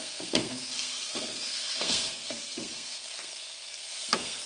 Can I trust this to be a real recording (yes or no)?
no